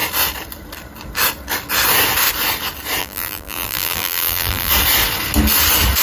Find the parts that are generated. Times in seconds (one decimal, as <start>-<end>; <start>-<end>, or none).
3.0-4.7